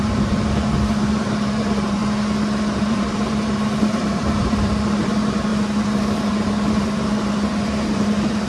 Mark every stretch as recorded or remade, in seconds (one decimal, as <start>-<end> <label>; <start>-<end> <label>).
0.0-2.0 remade; 2.0-2.6 recorded; 2.6-8.5 remade